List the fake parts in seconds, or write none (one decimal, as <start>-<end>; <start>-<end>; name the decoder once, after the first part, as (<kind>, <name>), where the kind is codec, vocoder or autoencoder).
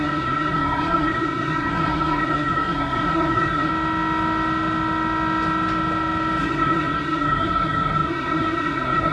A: 0.0-3.7 (codec, SNAC); 6.4-9.1